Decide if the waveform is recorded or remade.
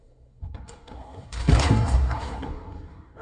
remade